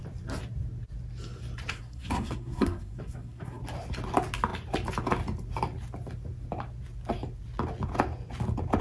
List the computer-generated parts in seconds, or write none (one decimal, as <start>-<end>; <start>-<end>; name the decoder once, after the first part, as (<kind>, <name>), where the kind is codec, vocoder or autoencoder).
1.7-3.6 (codec, SNAC)